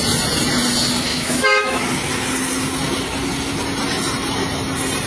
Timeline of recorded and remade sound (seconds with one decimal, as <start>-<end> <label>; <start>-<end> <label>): 0.0-1.1 recorded; 1.1-1.8 remade; 1.8-5.1 recorded